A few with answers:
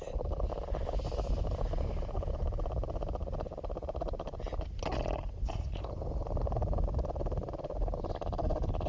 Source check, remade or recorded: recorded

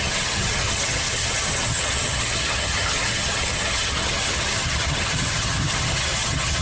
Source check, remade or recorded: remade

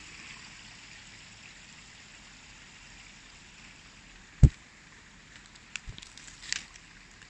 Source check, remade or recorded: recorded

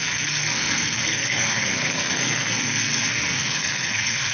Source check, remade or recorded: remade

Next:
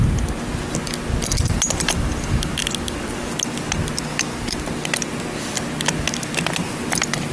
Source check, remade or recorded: recorded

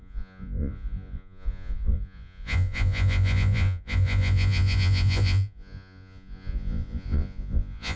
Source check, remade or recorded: remade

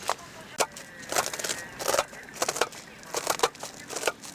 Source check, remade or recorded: recorded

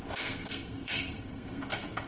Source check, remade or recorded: remade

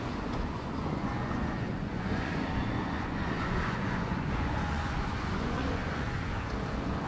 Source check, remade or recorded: remade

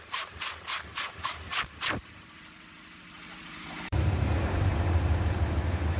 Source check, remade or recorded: remade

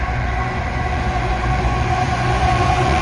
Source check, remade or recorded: remade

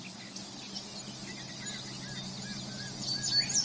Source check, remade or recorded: recorded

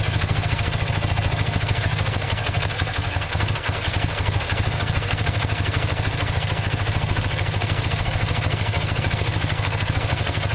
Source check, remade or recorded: remade